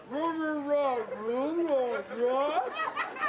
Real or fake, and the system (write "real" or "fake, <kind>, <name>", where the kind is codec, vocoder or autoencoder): real